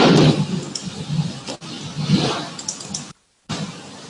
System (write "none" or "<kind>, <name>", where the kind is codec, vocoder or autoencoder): none